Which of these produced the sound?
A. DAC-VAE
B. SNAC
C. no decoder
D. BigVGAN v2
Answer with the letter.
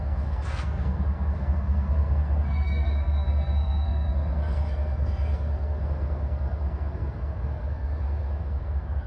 B